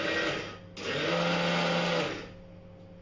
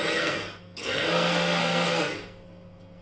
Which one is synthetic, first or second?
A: second